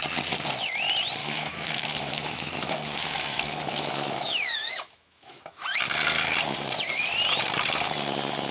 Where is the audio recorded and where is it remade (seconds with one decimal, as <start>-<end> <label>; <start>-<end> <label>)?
0.0-1.2 recorded; 1.2-5.8 remade; 5.8-8.5 recorded

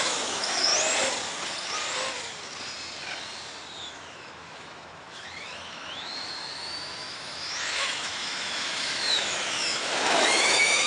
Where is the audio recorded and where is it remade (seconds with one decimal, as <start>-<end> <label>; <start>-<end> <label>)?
0.0-0.7 remade; 0.7-3.8 recorded; 3.8-10.9 remade

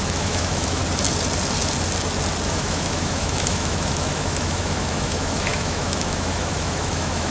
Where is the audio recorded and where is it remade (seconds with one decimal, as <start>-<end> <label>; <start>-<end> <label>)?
0.0-0.8 remade; 0.8-2.5 recorded; 2.5-7.3 remade

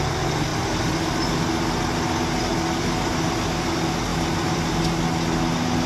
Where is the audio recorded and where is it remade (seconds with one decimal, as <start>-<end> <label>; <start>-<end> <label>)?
0.0-5.9 recorded

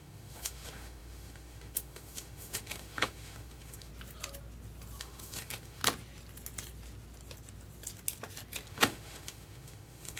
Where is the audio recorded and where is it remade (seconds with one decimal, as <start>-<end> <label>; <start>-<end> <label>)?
0.0-3.9 remade; 3.9-5.0 recorded; 5.0-5.8 remade; 5.8-8.7 recorded; 8.7-10.2 remade

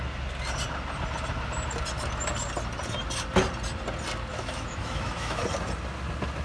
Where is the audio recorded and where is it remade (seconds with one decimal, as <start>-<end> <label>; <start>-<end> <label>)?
0.0-4.3 recorded; 4.3-5.4 remade; 5.4-6.4 recorded

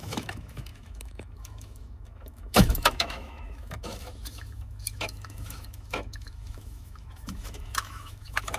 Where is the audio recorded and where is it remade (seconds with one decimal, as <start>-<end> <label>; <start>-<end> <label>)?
0.0-8.6 remade

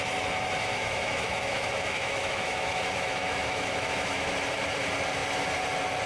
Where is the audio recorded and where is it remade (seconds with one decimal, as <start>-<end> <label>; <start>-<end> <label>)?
0.0-0.6 recorded; 0.6-4.3 remade; 4.3-6.1 recorded